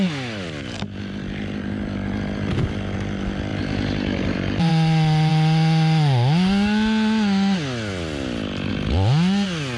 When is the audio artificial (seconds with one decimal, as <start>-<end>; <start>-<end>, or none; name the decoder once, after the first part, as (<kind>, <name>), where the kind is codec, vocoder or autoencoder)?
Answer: 3.5-4.7 (vocoder, BigVGAN v2)